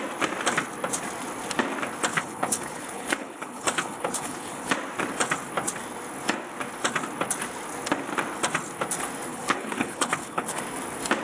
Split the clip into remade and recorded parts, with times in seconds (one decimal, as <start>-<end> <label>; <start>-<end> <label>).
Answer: 0.0-2.1 recorded; 2.1-4.7 remade; 4.7-9.3 recorded; 9.3-10.6 remade; 10.6-11.2 recorded